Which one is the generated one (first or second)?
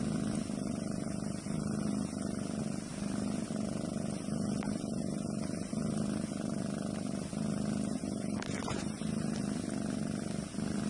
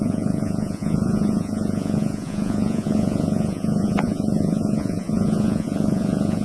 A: second